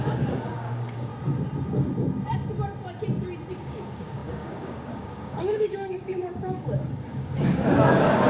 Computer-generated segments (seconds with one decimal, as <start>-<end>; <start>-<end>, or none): 0.0-1.1; 3.5-8.3